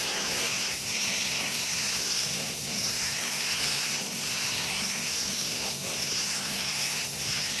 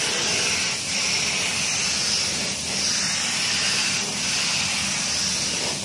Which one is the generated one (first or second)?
first